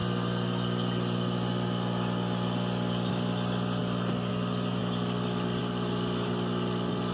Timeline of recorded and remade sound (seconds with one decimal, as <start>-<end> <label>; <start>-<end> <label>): 0.0-3.8 recorded; 3.8-4.3 remade; 4.3-7.1 recorded

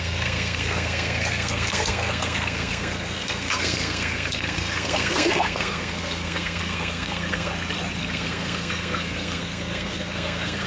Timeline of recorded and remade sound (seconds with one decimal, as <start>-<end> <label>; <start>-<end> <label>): 0.0-7.5 remade; 7.5-8.0 recorded; 8.0-10.7 remade

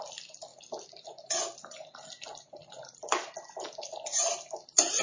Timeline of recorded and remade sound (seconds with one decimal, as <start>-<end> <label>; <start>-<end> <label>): 0.0-5.0 recorded

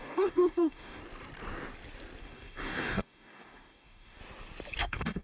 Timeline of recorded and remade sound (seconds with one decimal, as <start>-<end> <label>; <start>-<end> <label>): 0.0-1.0 remade; 1.0-2.2 recorded; 2.2-4.2 remade; 4.2-4.8 recorded; 4.8-5.2 remade